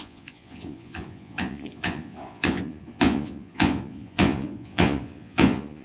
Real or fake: fake